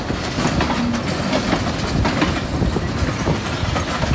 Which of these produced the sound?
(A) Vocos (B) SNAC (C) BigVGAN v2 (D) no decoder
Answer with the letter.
D